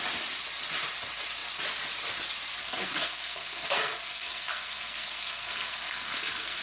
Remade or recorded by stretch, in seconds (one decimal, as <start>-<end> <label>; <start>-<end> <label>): 0.0-2.6 recorded; 2.6-6.6 remade